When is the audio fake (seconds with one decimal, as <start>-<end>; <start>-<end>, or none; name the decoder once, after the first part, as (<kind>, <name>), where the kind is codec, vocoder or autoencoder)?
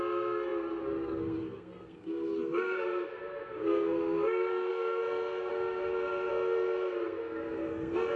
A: 0.0-5.5 (codec, SNAC); 6.3-8.2